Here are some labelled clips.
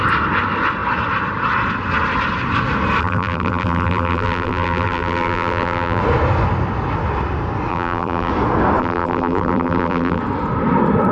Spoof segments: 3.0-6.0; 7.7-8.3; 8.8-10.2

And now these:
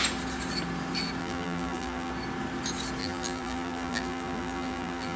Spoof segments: 1.2-2.1; 3.0-5.2

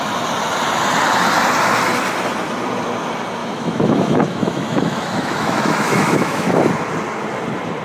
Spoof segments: 3.4-6.7

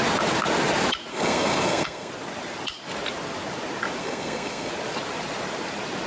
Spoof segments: 1.1-2.1; 4.0-4.7

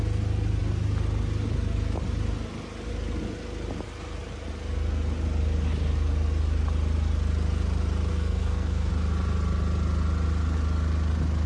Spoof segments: 8.1-8.9

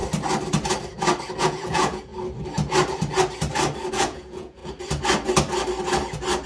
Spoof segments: 1.4-2.1; 3.9-4.6